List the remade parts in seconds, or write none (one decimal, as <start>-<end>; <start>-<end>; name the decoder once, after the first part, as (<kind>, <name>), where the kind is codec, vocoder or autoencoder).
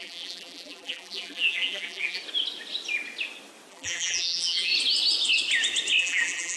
0.0-2.2 (vocoder, BigVGAN v2); 3.7-4.7; 6.0-6.6